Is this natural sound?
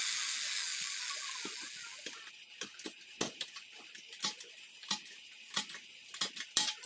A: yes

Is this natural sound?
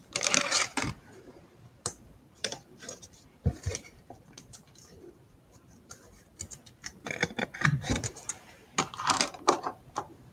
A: no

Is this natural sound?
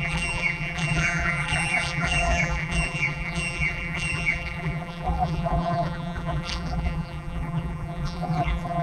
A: no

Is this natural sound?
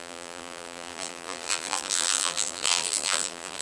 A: no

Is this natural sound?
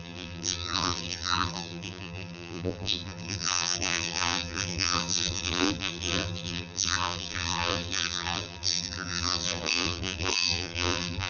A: no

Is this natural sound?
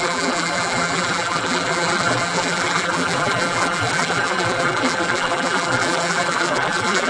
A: no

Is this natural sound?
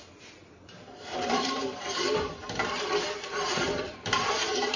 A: no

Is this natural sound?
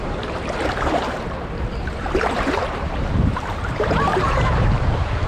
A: no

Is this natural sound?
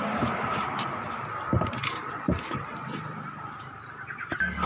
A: no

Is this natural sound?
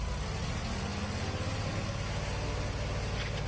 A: yes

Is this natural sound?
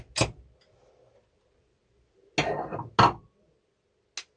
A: yes